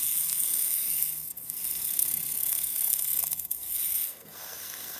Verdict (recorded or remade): remade